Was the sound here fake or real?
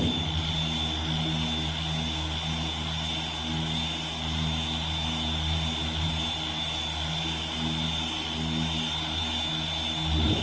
real